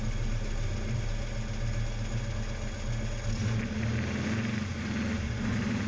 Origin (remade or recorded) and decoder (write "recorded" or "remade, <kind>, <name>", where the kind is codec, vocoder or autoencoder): recorded